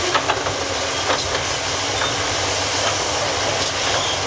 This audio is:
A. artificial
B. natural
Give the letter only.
B